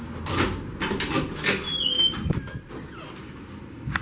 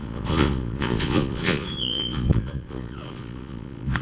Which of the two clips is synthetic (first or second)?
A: second